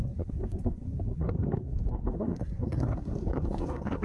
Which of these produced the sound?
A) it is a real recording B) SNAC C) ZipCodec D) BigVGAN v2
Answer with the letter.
B